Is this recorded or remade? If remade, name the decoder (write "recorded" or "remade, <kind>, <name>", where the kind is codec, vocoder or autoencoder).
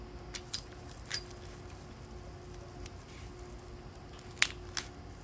recorded